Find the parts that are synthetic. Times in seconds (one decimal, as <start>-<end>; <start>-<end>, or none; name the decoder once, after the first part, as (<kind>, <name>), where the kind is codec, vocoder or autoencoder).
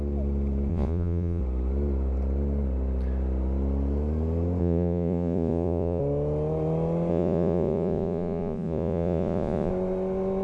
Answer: 0.7-1.4 (vocoder, Vocos); 4.6-6.0; 7.1-9.7